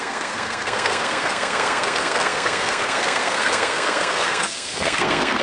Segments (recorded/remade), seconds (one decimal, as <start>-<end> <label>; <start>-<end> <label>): 0.0-5.4 remade